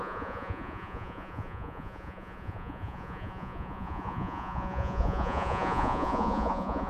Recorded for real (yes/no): no